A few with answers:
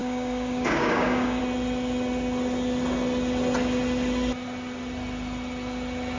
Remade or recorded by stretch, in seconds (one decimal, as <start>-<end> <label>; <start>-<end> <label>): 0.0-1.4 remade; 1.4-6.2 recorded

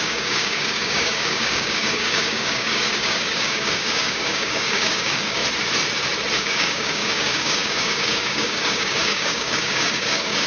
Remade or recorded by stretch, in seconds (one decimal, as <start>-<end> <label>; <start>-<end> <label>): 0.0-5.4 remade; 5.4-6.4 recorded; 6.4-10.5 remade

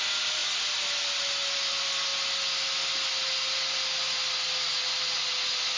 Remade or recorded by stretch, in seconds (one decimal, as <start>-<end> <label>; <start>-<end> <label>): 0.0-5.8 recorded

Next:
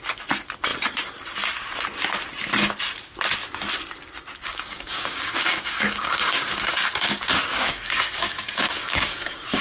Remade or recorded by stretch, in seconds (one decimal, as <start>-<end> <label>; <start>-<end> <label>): 0.0-4.4 recorded; 4.4-9.6 remade

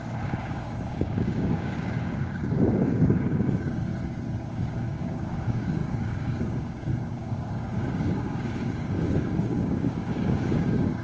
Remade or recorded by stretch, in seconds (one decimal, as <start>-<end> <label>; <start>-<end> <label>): 0.0-3.9 remade; 3.9-4.5 recorded; 4.5-11.0 remade

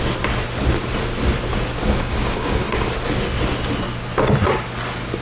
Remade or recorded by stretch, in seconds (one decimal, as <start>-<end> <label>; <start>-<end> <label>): 0.0-1.8 recorded; 1.8-2.9 remade; 2.9-5.2 recorded